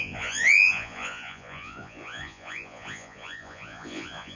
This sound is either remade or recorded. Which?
remade